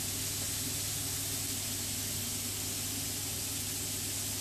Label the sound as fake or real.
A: real